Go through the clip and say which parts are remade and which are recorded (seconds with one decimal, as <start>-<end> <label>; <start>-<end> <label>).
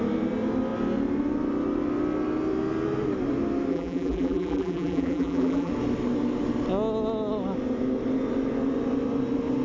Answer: 0.0-3.7 recorded; 3.7-5.7 remade; 5.7-9.6 recorded